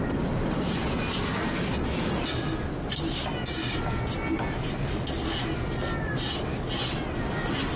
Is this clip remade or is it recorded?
recorded